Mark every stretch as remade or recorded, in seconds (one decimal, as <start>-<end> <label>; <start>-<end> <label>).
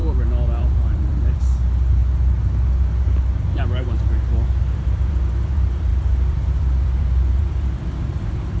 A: 0.0-2.0 remade; 2.0-4.6 recorded; 4.6-8.6 remade